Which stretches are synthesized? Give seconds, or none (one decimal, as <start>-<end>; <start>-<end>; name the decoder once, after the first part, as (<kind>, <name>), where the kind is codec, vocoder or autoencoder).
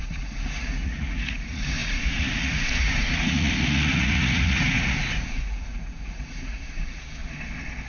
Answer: 0.0-7.2 (vocoder, Vocos)